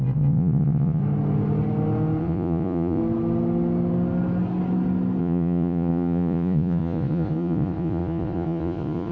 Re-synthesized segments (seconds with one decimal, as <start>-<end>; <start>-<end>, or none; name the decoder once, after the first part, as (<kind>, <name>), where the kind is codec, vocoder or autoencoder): 0.0-1.0 (vocoder, Vocos); 2.2-3.0; 5.2-9.1